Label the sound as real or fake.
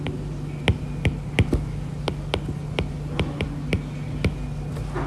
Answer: real